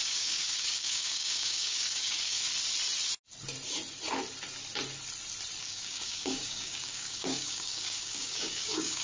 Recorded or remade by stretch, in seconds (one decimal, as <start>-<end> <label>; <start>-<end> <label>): 0.0-2.5 remade; 2.5-5.6 recorded; 5.6-9.0 remade